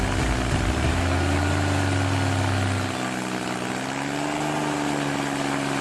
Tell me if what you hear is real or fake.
real